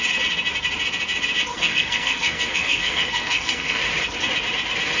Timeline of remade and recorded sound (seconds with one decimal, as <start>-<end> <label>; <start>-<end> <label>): 0.0-1.5 recorded; 1.5-3.8 remade; 3.8-5.0 recorded